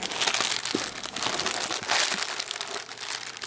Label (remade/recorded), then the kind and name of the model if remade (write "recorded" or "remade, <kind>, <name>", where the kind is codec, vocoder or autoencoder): recorded